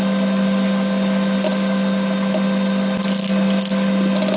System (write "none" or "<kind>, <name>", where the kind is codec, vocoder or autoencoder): none